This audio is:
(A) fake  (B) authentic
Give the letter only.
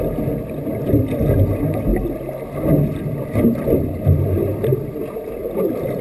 B